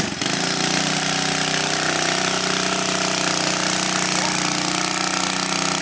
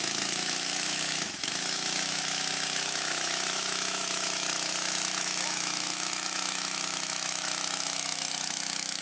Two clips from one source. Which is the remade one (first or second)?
second